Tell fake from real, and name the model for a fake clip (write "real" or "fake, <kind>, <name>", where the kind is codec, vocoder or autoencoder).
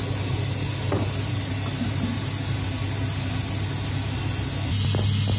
real